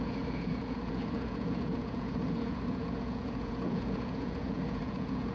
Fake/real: fake